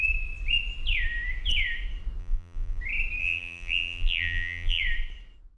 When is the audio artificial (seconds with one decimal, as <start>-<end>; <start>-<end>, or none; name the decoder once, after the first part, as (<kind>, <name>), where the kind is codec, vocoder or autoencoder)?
2.2-2.8 (vocoder, BigVGAN v2); 3.2-4.8